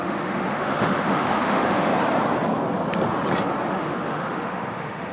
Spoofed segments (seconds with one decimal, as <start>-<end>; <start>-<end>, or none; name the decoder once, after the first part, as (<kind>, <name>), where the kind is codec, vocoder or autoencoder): 0.0-1.9 (autoencoder, DAC-VAE); 3.7-5.1